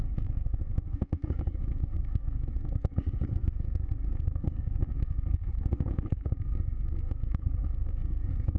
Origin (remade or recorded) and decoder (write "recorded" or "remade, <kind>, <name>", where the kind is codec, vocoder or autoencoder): remade, codec, SNAC